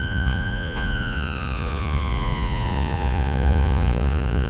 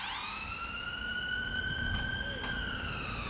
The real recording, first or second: second